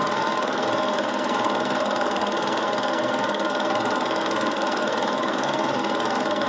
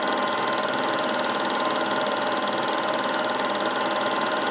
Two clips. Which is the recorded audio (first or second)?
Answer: second